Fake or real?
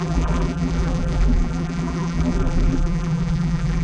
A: fake